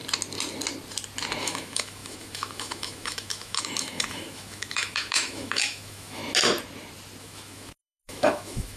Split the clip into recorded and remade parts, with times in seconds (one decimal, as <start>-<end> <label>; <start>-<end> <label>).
0.0-1.4 recorded; 1.4-6.2 remade; 6.2-7.2 recorded; 7.2-8.8 remade